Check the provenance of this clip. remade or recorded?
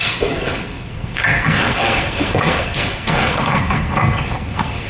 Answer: remade